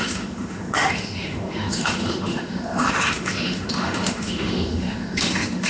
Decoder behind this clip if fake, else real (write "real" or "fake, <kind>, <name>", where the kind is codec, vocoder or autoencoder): fake, autoencoder, DAC-VAE